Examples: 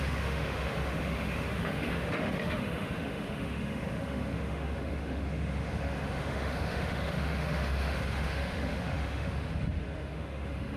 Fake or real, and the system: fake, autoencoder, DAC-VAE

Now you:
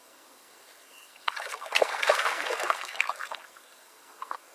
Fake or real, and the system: fake, codec, SNAC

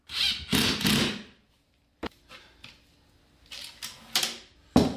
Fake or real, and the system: real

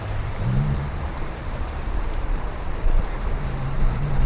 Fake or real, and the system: fake, vocoder, BigVGAN v2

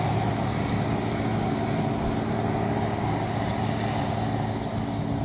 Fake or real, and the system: real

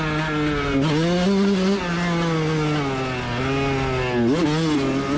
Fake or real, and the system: real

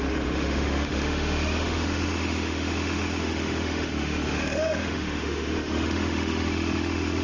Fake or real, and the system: fake, autoencoder, DAC-VAE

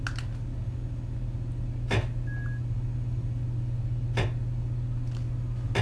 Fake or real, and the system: real